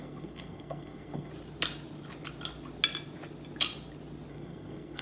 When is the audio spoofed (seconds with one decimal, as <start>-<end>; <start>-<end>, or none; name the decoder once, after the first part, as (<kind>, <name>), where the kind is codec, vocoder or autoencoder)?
0.0-1.3 (codec, SNAC); 4.3-5.0